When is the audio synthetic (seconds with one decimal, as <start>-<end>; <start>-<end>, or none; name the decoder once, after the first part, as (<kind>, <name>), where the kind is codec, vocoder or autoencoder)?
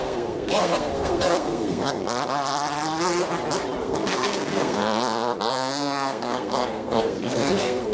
0.0-2.0 (codec, SNAC); 3.8-4.8; 5.5-7.9